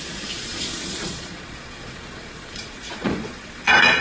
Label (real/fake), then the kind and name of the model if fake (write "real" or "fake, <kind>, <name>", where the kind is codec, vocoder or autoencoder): fake, vocoder, Vocos